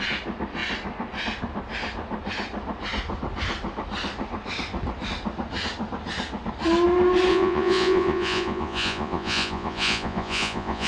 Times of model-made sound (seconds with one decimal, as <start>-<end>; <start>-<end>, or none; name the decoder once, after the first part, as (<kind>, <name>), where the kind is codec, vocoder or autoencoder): 7.3-10.9 (vocoder, Vocos)

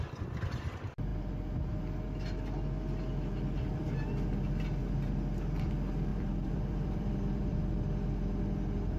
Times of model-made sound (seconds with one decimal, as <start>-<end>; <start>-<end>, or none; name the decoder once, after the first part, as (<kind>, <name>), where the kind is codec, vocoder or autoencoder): 6.1-7.6 (vocoder, BigVGAN v2)